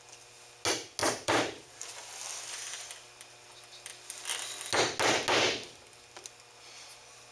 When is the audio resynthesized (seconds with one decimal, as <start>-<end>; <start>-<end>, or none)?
1.0-1.7